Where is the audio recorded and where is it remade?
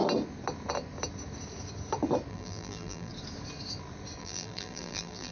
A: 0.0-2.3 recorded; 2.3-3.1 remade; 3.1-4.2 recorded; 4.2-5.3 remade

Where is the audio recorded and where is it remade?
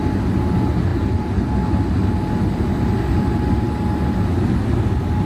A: 0.0-5.3 recorded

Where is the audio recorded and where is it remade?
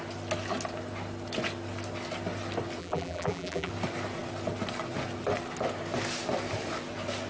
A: 0.0-2.8 recorded; 2.8-3.7 remade; 3.7-7.3 recorded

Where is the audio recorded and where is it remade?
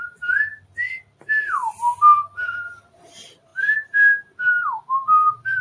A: 0.0-0.5 remade; 0.5-2.9 recorded; 2.9-5.6 remade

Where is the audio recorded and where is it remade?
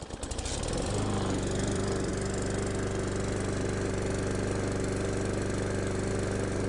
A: 0.0-2.1 remade; 2.1-6.1 recorded; 6.1-6.7 remade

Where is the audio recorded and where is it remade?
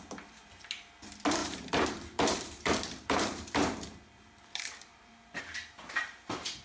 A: 0.0-1.4 recorded; 1.4-5.4 remade; 5.4-6.6 recorded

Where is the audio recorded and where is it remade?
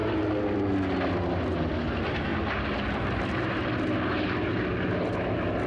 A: 0.0-5.7 recorded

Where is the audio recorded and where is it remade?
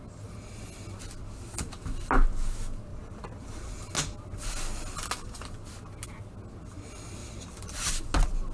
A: 0.0-2.9 recorded; 2.9-3.8 remade; 3.8-7.2 recorded; 7.2-7.9 remade; 7.9-8.5 recorded